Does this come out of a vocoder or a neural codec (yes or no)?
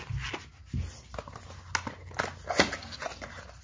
no